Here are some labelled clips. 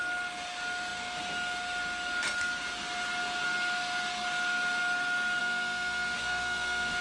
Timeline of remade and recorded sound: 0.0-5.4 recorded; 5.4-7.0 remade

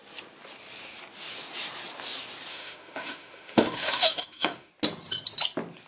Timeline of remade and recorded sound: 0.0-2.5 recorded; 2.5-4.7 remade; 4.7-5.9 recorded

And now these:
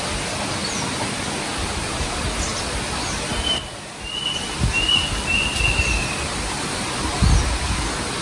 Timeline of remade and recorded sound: 0.0-8.2 recorded

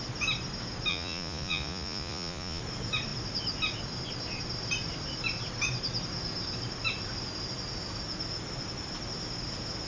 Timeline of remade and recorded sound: 0.0-0.9 recorded; 0.9-2.6 remade; 2.6-9.9 recorded